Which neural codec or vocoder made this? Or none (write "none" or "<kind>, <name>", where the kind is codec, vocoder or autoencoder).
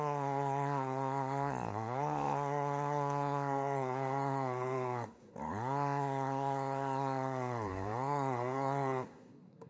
codec, SNAC